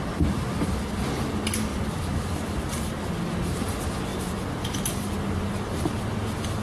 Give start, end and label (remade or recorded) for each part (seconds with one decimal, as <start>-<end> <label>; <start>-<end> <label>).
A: 0.0-1.7 recorded; 1.7-3.1 remade; 3.1-4.1 recorded; 4.1-6.0 remade; 6.0-6.6 recorded